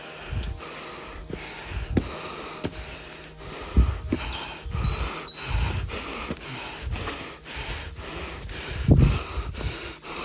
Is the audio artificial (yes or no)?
no